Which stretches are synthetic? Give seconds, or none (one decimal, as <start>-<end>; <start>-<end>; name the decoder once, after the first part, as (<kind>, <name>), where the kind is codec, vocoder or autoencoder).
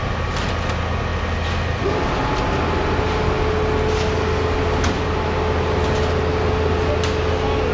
none